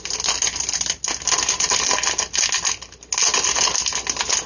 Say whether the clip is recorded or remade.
recorded